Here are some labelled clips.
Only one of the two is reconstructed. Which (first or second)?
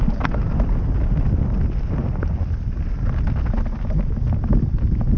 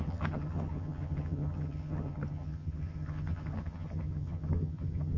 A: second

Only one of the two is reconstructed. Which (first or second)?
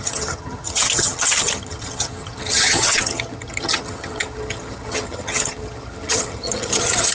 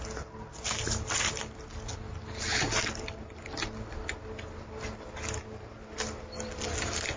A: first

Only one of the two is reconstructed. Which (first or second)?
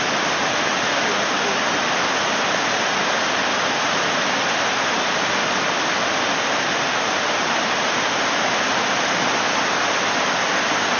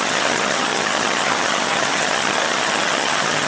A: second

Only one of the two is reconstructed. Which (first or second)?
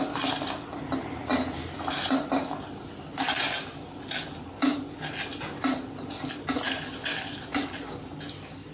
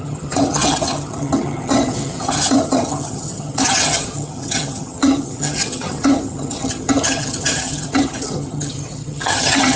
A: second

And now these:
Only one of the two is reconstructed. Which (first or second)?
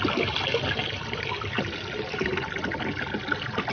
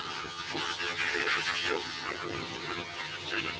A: second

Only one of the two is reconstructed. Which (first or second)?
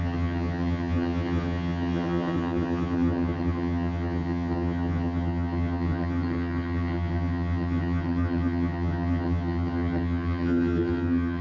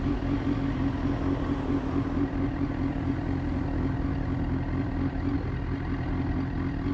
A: first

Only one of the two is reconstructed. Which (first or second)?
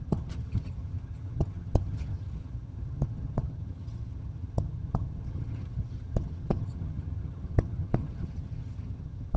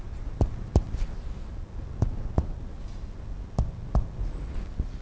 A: first